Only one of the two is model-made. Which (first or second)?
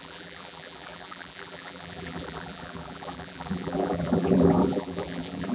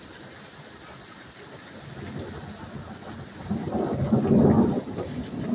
first